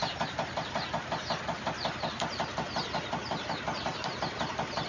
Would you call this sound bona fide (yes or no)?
no